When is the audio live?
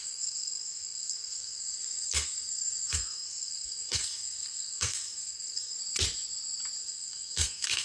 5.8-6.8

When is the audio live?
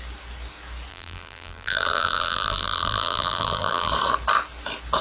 0.0-0.9; 3.9-5.0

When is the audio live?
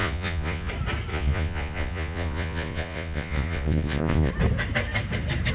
0.7-1.1; 4.3-5.5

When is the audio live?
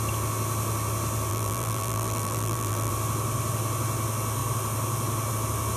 0.0-1.3; 2.9-5.8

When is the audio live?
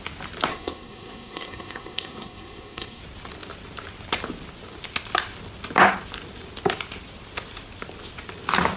0.0-0.5; 3.0-8.8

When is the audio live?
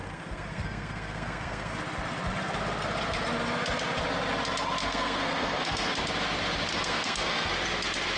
1.7-4.8; 5.9-6.7; 7.5-8.2